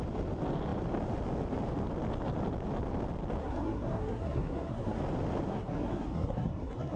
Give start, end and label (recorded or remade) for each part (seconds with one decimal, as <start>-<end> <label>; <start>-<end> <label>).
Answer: 0.0-3.4 recorded; 3.4-5.0 remade; 5.0-5.5 recorded; 5.5-7.0 remade